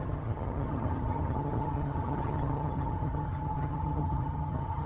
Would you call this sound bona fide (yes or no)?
no